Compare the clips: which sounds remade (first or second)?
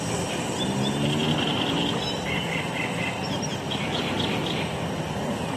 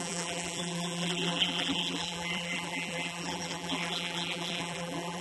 second